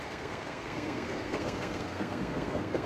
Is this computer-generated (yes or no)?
yes